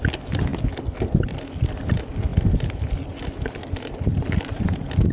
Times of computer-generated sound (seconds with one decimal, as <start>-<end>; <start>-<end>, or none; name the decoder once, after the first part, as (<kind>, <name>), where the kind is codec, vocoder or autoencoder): none